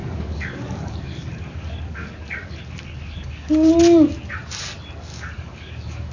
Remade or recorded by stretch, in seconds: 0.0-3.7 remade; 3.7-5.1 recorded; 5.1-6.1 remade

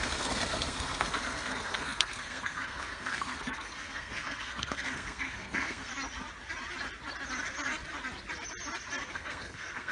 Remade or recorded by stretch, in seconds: 0.0-5.9 remade; 5.9-9.1 recorded; 9.1-9.9 remade

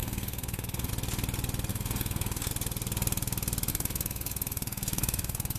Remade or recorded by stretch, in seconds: 0.0-0.9 remade; 0.9-1.7 recorded; 1.7-2.5 remade; 2.5-3.7 recorded; 3.7-5.6 remade

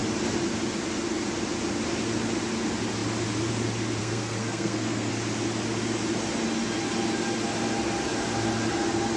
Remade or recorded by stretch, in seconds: 0.0-4.0 recorded; 4.0-5.1 remade; 5.1-9.2 recorded

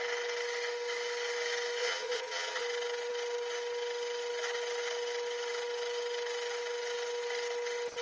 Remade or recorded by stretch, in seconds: 0.0-1.8 recorded; 1.8-2.6 remade; 2.6-8.0 recorded

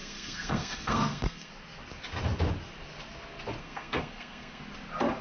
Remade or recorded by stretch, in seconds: 0.0-1.5 remade; 1.5-3.6 recorded; 3.6-4.6 remade; 4.6-5.2 recorded

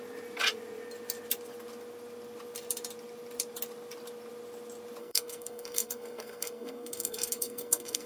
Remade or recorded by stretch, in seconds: 0.0-5.0 recorded; 5.0-8.1 remade

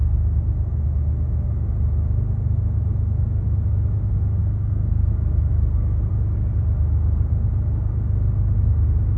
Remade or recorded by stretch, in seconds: 0.0-4.4 recorded; 4.4-5.1 remade; 5.1-5.5 recorded; 5.5-6.1 remade; 6.1-9.2 recorded